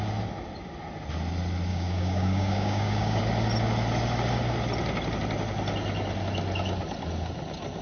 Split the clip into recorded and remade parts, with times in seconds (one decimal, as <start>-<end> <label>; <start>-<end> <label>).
0.0-1.7 recorded; 1.7-3.2 remade; 3.2-7.8 recorded